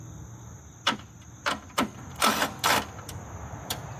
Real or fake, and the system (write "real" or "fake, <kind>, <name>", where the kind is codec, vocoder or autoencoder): real